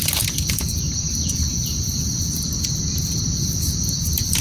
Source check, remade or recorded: recorded